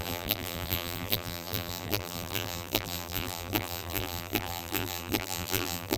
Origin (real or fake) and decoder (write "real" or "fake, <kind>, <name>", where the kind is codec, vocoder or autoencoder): fake, vocoder, BigVGAN v2